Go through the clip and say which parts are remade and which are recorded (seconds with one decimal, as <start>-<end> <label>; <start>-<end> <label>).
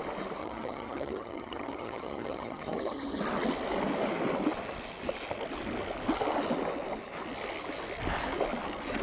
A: 0.0-0.4 recorded; 0.4-3.2 remade; 3.2-9.0 recorded